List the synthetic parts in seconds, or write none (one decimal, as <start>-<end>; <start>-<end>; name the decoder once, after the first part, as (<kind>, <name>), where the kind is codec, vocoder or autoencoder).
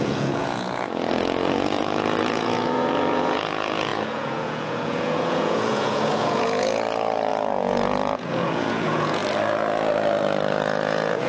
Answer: 0.0-9.2 (vocoder, Vocos); 10.5-11.3